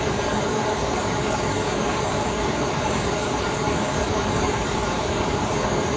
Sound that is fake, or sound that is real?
fake